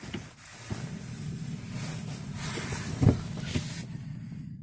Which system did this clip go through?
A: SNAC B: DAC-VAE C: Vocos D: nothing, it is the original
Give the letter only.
D